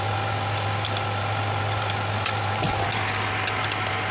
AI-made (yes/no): no